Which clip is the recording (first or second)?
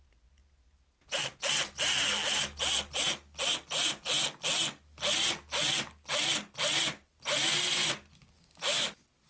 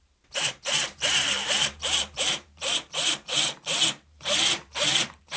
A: first